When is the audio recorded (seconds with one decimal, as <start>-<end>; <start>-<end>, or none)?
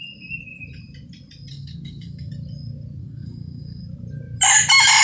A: 0.0-1.5; 2.3-3.0; 3.8-5.0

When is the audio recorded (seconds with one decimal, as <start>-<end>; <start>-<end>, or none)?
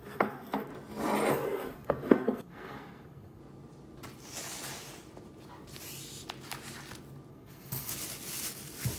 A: 0.7-1.3; 3.4-7.3; 7.9-9.0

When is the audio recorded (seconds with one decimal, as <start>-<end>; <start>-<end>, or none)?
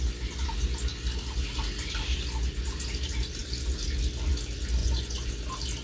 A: 0.0-4.8; 5.3-5.8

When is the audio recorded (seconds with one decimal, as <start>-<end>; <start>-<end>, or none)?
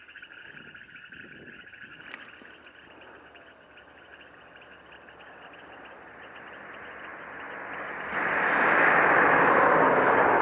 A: 0.0-10.4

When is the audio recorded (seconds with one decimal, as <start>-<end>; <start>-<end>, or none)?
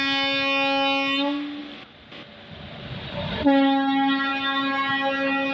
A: 0.0-5.5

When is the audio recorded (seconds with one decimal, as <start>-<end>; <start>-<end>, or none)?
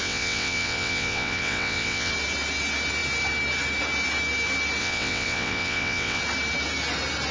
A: 2.1-4.8; 6.2-7.3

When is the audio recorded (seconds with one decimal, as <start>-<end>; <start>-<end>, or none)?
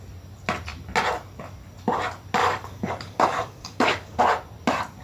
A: 0.0-2.4; 4.2-5.0